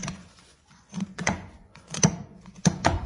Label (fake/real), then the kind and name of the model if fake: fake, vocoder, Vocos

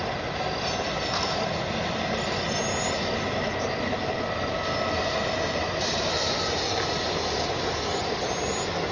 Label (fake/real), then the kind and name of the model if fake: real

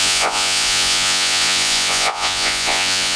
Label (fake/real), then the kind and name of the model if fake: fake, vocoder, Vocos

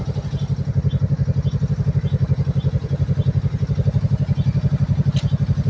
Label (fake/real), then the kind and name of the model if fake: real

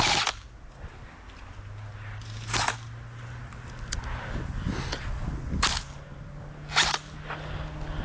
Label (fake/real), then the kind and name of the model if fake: real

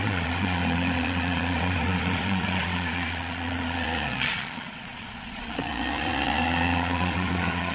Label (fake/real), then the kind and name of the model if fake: fake, vocoder, Vocos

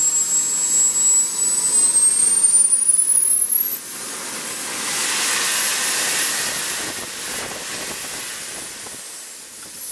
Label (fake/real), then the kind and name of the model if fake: real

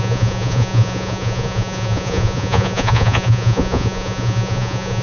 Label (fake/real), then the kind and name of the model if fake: fake, vocoder, Vocos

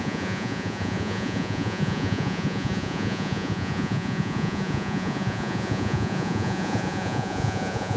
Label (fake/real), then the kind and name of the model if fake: fake, vocoder, Vocos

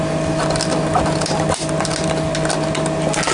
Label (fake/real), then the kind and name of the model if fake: real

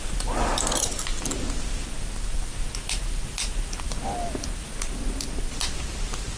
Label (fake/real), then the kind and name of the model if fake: real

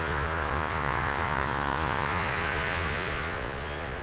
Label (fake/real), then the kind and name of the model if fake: fake, vocoder, Vocos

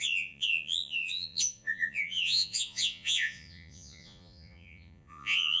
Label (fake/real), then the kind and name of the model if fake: fake, vocoder, Vocos